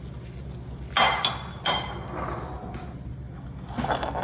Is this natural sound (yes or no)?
yes